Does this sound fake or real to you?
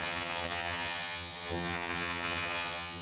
fake